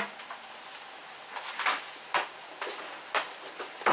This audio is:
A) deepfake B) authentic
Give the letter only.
B